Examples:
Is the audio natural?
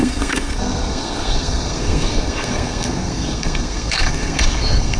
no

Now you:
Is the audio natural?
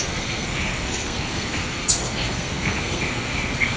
no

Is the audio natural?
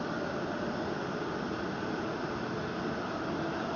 yes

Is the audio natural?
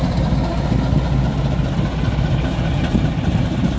yes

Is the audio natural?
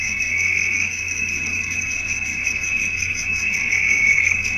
no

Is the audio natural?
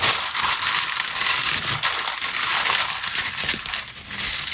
yes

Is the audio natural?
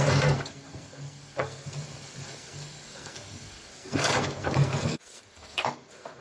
no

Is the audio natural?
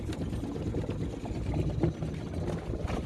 yes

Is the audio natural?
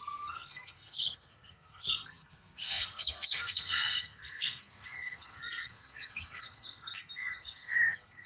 no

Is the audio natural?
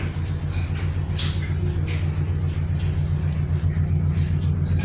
yes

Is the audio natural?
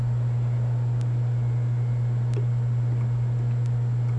yes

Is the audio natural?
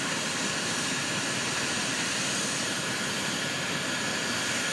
yes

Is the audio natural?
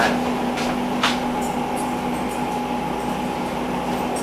yes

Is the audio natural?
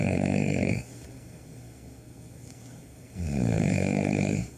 no